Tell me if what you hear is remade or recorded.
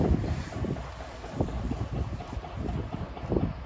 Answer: recorded